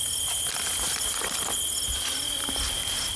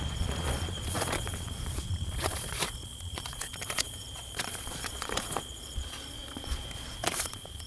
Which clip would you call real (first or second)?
first